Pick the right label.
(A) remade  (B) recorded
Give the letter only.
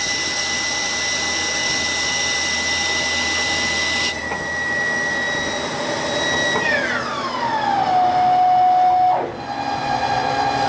B